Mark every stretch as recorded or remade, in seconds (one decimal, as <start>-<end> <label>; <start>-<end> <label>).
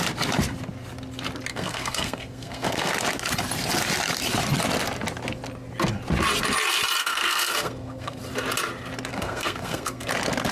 0.0-1.5 recorded; 1.5-2.9 remade; 2.9-7.0 recorded; 7.0-8.2 remade; 8.2-9.1 recorded; 9.1-10.1 remade; 10.1-10.5 recorded